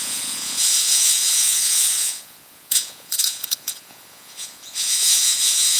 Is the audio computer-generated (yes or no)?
yes